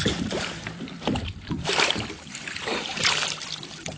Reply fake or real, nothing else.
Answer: fake